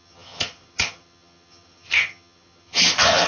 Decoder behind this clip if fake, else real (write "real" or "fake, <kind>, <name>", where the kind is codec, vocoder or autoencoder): fake, vocoder, HiFi-GAN